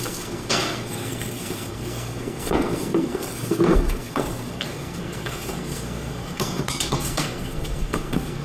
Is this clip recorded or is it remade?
remade